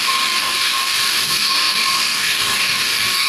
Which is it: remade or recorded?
remade